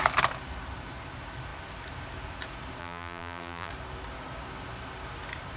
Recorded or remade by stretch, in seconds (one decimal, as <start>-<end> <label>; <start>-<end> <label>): 0.0-2.8 recorded; 2.8-3.7 remade; 3.7-5.6 recorded